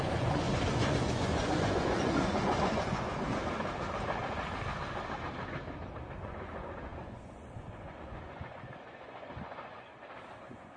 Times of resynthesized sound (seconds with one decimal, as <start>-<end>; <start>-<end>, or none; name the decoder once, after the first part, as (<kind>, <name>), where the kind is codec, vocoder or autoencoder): 0.0-3.4 (vocoder, Vocos); 6.2-9.9; 10.4-10.8